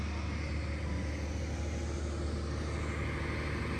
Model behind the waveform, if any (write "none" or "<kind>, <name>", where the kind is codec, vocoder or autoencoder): none